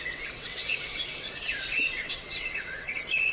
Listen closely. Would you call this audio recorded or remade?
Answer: remade